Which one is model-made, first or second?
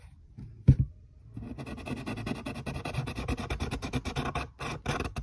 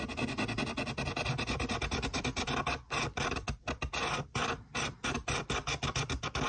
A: first